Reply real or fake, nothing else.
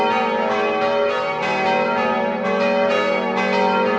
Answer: real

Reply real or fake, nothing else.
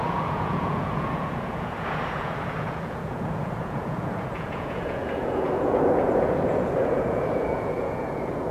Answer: fake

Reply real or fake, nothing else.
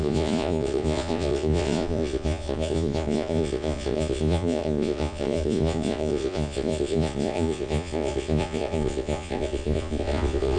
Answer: fake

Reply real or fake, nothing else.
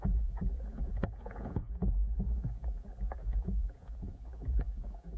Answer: fake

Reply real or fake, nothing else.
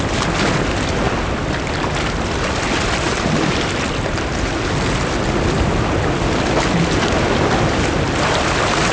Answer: real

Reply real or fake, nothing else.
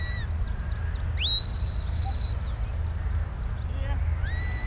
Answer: real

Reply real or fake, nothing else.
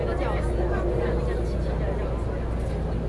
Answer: real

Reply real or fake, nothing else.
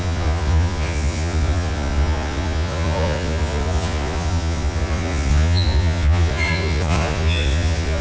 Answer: fake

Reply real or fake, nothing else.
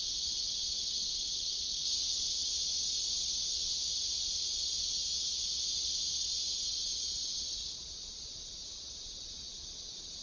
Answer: fake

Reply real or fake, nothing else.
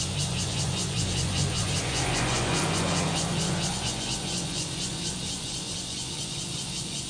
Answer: fake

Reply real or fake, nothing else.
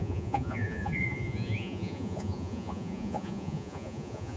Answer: fake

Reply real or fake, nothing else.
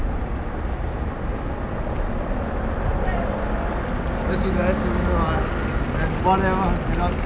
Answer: real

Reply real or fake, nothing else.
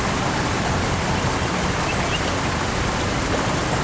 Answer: real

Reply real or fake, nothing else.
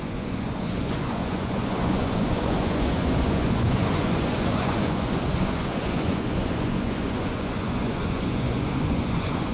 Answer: fake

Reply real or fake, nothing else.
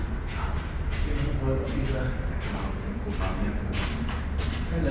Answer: real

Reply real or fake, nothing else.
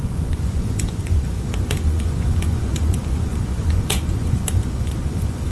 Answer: fake